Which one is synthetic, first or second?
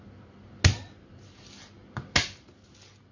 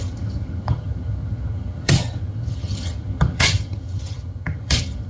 second